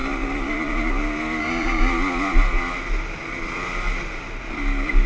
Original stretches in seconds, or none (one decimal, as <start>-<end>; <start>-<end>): 0.0-1.4; 1.9-5.1